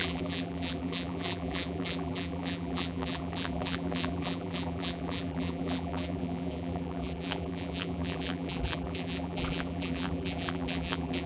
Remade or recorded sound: remade